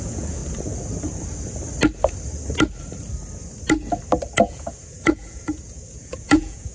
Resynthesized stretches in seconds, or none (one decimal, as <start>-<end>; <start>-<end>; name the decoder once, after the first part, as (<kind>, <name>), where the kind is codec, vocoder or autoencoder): 0.0-0.4 (vocoder, Vocos); 4.4-6.7